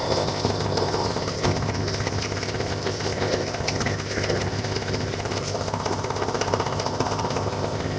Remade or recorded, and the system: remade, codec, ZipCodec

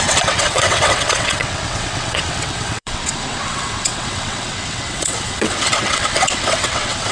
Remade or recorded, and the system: remade, vocoder, WaveNeXt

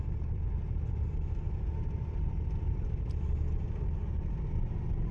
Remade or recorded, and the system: recorded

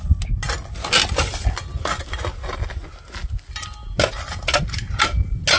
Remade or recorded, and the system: recorded